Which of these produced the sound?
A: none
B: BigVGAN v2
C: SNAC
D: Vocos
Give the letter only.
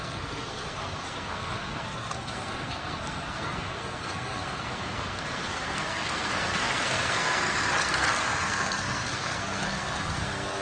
C